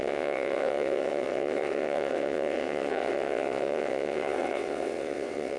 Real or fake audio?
fake